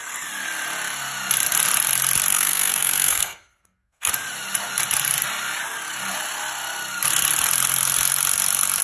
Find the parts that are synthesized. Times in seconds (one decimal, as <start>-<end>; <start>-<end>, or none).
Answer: 2.3-4.1